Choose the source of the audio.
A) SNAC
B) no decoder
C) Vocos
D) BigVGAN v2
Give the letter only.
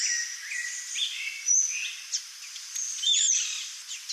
B